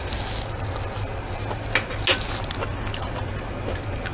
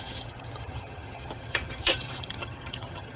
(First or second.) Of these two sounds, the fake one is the second